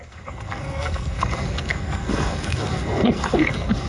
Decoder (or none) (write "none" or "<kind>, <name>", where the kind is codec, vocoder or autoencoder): codec, SNAC